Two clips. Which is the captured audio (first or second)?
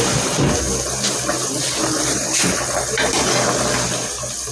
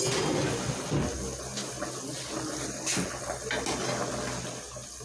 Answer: second